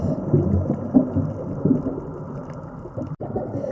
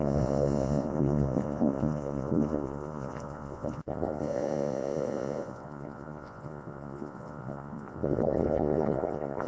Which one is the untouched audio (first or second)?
first